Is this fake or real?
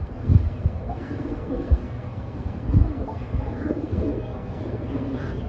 fake